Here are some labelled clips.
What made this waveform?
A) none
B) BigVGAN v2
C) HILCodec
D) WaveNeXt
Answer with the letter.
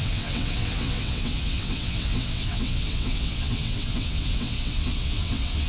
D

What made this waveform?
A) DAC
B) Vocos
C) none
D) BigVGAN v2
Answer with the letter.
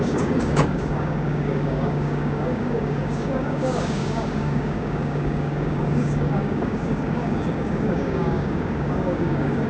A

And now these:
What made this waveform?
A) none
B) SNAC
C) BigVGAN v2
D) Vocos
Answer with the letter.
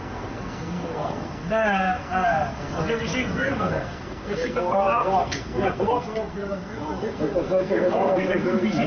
B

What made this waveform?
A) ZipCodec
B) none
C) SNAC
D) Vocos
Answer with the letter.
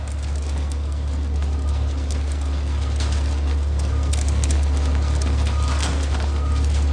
C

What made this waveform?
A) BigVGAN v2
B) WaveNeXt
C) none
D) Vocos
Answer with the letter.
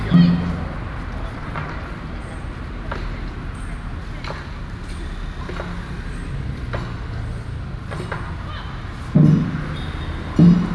C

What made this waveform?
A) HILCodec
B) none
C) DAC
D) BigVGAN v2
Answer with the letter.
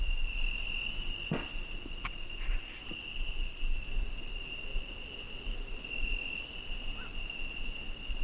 B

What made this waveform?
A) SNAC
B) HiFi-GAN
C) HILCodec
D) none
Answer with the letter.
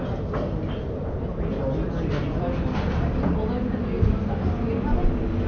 D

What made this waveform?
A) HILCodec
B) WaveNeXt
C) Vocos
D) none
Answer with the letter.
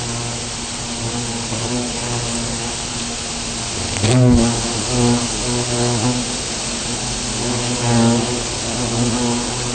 D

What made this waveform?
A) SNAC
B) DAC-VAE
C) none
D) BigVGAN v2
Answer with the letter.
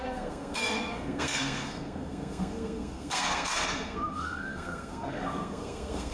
A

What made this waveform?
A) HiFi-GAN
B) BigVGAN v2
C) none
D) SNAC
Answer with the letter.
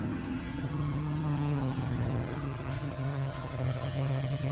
A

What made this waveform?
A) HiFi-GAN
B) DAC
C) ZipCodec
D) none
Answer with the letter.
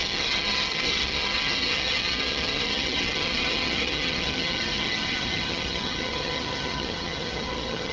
A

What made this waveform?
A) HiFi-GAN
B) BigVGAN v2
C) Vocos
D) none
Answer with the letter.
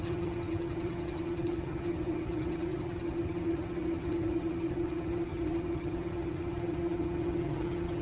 A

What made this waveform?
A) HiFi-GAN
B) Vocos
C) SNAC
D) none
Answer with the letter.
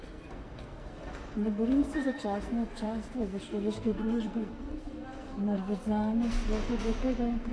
C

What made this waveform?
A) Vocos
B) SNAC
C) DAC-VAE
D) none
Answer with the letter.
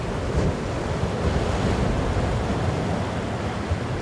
D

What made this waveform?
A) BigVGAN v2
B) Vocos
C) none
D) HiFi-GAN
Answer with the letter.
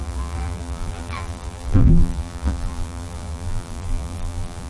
A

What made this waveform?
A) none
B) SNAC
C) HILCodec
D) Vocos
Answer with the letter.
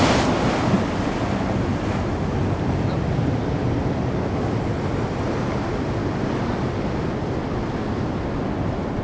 A